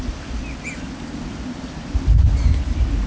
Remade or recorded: recorded